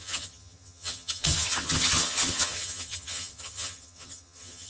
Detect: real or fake fake